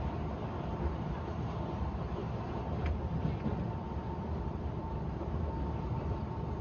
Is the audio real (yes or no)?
no